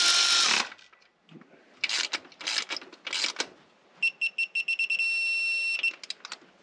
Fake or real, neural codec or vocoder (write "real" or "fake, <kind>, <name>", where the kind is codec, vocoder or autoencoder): real